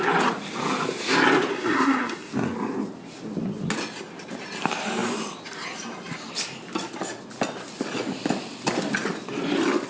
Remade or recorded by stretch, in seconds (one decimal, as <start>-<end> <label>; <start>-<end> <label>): 0.0-1.5 recorded; 1.5-2.3 remade; 2.3-9.9 recorded